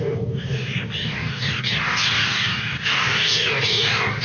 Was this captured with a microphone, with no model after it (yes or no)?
no